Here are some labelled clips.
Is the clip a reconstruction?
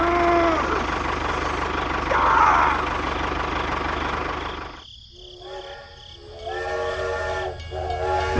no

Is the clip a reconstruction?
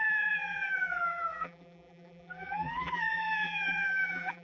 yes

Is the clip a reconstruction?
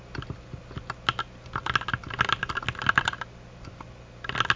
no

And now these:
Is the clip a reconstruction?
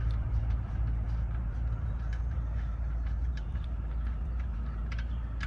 yes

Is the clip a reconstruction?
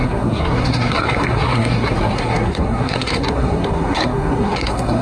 yes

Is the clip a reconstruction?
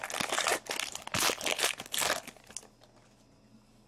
no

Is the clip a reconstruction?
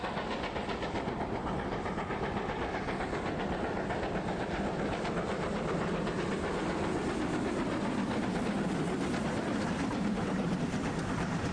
no